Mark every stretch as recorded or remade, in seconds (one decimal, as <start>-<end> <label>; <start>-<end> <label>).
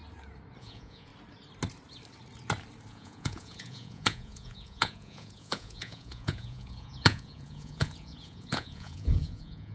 0.0-0.6 recorded; 0.6-1.1 remade; 1.1-2.9 recorded; 2.9-9.7 remade